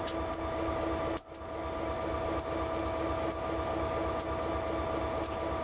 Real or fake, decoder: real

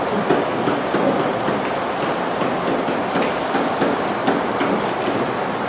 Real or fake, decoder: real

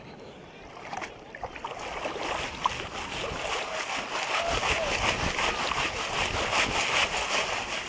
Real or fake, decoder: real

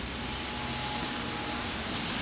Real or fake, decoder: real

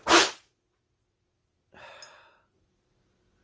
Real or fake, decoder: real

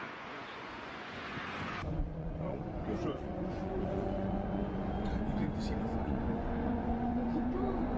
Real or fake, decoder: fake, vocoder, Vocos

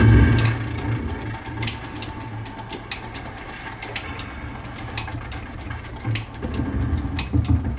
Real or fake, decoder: real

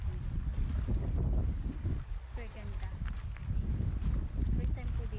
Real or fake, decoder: real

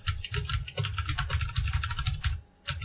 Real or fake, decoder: real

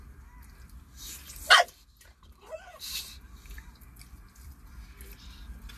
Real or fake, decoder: real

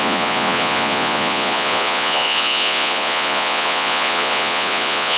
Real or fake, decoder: fake, vocoder, Vocos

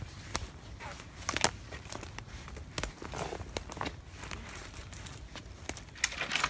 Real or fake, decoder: real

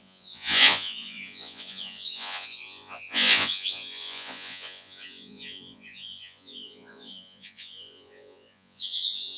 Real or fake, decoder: fake, vocoder, Vocos